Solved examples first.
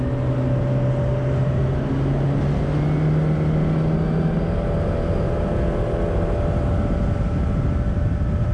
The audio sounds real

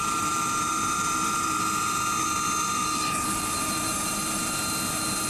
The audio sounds fake